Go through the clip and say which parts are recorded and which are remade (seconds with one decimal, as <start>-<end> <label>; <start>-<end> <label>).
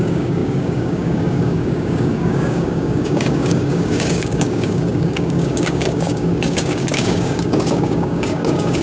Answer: 0.0-8.8 remade